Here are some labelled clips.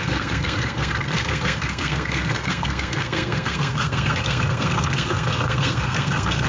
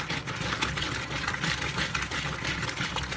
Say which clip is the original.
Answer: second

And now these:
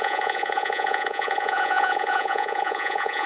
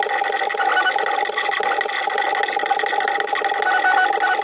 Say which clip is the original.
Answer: second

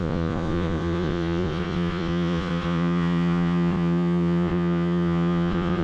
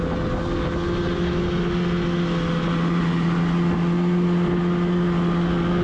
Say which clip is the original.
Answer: second